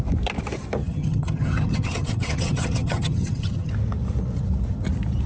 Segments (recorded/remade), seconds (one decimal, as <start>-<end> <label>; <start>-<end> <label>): 0.0-0.8 recorded; 0.8-3.7 remade; 3.7-5.3 recorded